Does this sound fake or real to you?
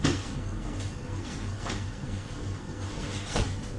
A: fake